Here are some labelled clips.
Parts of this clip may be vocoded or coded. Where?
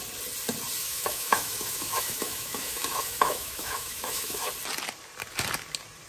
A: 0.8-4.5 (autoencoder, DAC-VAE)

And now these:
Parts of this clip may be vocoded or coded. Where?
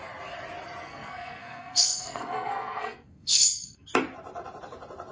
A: 0.8-3.9 (codec, SNAC)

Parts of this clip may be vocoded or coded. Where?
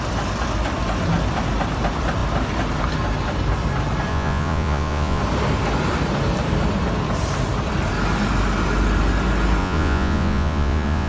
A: 4.1-5.2 (vocoder, Vocos); 9.6-11.1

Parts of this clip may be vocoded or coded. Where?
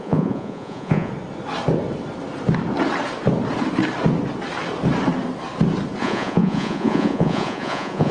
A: 0.0-1.1 (vocoder, Vocos); 6.0-8.1